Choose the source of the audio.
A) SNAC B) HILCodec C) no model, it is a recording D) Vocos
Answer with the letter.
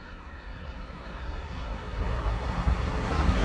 A